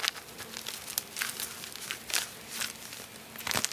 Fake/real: real